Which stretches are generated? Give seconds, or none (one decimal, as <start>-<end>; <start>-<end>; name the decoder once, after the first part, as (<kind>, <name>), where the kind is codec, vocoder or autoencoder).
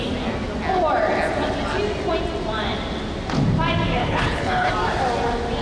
4.0-4.7 (codec, HILCodec)